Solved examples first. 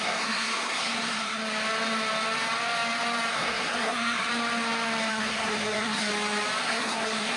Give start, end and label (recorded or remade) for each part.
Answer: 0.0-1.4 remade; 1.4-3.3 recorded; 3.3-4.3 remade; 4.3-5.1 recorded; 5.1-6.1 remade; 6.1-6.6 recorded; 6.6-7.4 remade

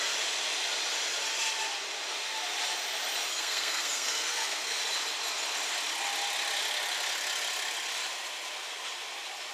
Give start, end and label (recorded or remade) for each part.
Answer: 0.0-3.3 recorded; 3.3-4.8 remade; 4.8-9.5 recorded

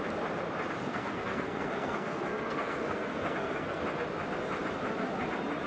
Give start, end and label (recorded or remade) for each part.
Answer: 0.0-0.8 recorded; 0.8-3.8 remade; 3.8-5.7 recorded

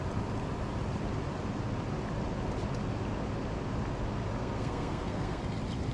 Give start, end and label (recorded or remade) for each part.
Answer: 0.0-4.4 recorded; 4.4-5.4 remade; 5.4-5.9 recorded